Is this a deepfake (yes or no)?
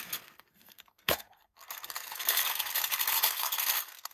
yes